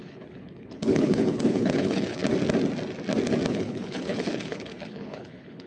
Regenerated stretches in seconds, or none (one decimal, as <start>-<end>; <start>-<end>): 0.0-2.2; 3.5-5.7